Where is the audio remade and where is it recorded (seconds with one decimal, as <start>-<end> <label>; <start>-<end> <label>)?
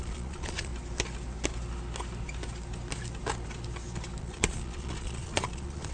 0.0-0.7 remade; 0.7-4.2 recorded; 4.2-5.9 remade